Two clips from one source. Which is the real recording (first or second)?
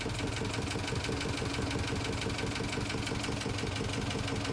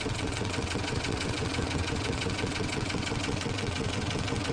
first